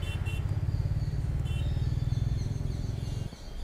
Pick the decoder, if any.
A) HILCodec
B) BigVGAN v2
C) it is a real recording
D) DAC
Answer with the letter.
C